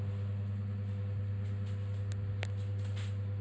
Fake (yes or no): no